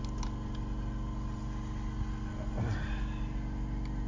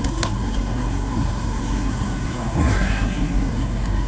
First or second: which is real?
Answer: first